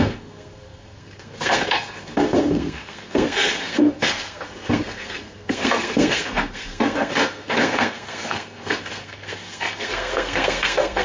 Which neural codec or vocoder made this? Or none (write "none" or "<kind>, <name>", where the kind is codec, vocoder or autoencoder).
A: codec, SNAC